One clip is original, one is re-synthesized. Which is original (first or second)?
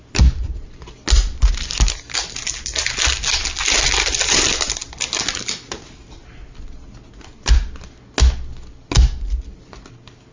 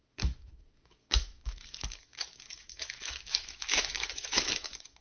first